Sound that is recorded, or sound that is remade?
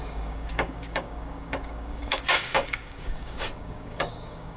remade